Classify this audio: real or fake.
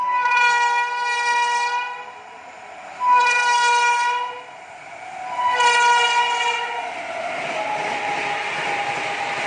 real